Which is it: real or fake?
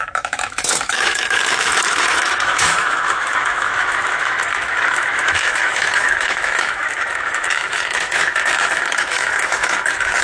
fake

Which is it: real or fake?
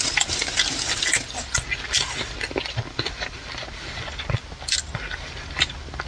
real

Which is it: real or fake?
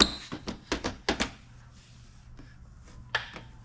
real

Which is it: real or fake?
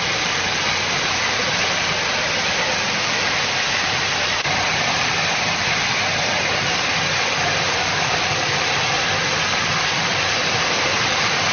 real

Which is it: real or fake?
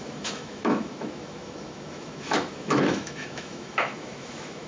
fake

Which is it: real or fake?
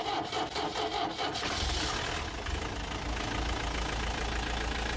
real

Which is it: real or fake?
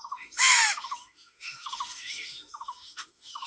fake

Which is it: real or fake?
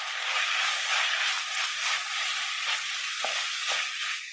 real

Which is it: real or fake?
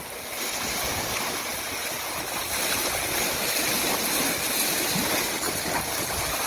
real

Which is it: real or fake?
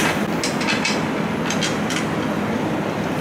real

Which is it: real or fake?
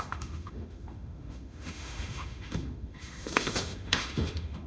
fake